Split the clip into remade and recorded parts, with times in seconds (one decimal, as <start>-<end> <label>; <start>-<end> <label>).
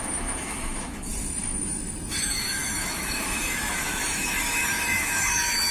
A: 0.0-1.1 remade; 1.1-2.2 recorded; 2.2-5.7 remade